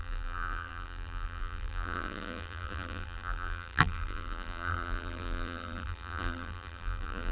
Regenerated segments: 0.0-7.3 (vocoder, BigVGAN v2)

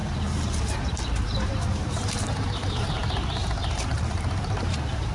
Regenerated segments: 1.7-5.1 (vocoder, BigVGAN v2)

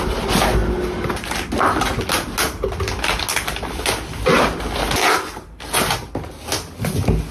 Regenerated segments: none

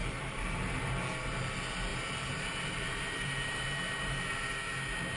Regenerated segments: 0.0-0.9 (vocoder, BigVGAN v2); 1.9-4.5